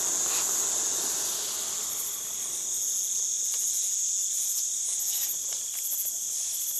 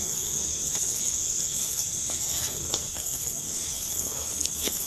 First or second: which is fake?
second